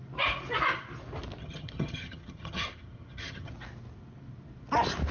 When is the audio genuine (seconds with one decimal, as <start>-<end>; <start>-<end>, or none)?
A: 0.0-1.4; 3.5-5.1